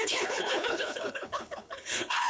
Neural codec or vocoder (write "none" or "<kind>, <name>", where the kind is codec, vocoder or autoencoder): codec, HILCodec